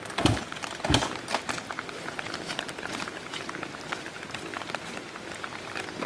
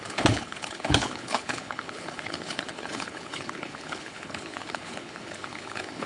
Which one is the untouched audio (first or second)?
first